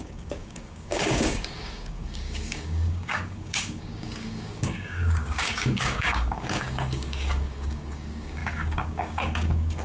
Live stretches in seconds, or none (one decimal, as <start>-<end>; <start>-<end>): none